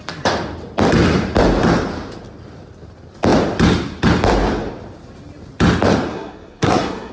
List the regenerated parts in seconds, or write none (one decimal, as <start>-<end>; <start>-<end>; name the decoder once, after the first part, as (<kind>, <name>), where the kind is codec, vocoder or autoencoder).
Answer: 6.1-7.1 (codec, SNAC)